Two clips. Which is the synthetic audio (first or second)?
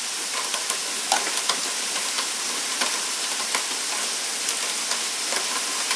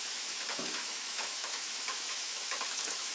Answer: second